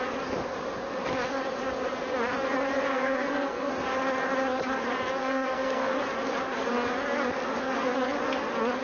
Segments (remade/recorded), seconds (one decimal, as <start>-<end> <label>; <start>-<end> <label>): 0.0-2.9 recorded; 2.9-3.7 remade; 3.7-5.2 recorded; 5.2-5.9 remade; 5.9-8.8 recorded